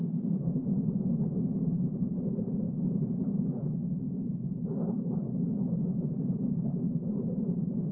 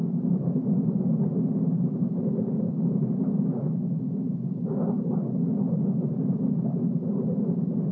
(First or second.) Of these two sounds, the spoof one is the first